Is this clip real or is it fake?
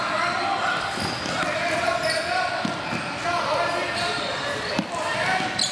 real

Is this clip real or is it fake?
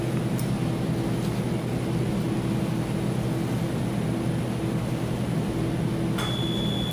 real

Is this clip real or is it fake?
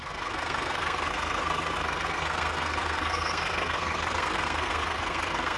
fake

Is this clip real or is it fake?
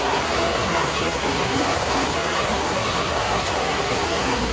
fake